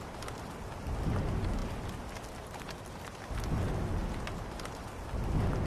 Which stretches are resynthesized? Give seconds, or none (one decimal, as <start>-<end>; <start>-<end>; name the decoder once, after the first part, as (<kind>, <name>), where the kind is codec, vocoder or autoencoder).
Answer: none